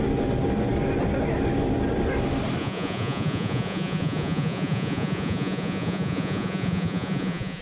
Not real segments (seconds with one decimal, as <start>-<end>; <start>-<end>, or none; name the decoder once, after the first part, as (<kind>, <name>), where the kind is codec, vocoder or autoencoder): 2.6-7.6 (vocoder, Vocos)